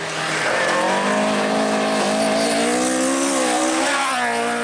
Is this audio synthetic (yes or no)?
no